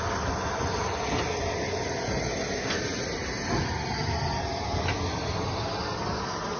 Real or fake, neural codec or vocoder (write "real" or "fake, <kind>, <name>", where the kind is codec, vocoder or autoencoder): real